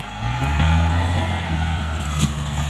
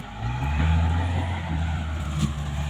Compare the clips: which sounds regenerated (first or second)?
first